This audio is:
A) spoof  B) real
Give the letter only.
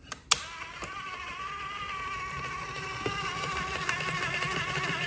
B